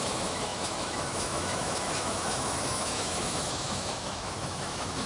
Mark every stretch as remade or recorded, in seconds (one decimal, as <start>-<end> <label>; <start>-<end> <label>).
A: 0.0-5.1 remade